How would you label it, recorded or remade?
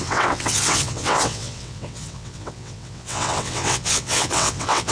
remade